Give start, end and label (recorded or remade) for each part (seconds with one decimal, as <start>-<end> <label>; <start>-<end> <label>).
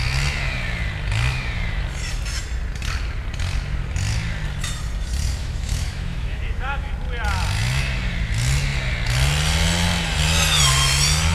0.0-5.4 recorded; 5.4-6.9 remade; 6.9-11.3 recorded